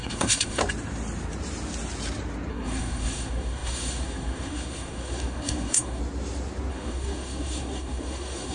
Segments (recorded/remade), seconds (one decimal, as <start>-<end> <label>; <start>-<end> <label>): 0.0-0.6 remade; 0.6-2.5 recorded; 2.5-6.0 remade; 6.0-6.7 recorded; 6.7-8.5 remade